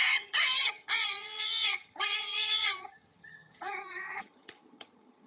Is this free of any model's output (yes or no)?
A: no